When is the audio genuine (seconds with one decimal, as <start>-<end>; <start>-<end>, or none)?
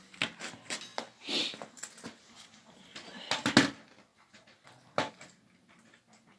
0.0-6.4